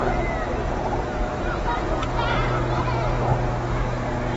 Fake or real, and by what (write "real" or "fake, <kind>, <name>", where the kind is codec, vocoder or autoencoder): real